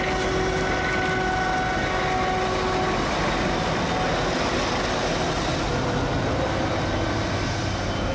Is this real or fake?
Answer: real